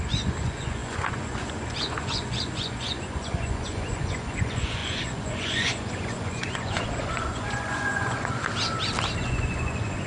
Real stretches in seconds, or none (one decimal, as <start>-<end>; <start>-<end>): 8.4-9.2